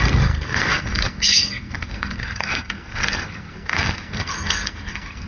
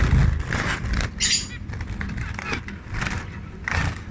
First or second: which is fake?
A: first